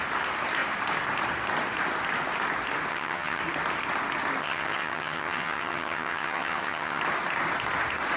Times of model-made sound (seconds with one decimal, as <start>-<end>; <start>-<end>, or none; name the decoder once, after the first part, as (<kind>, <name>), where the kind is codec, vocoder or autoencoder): 2.9-3.4 (vocoder, HiFi-GAN); 4.4-7.0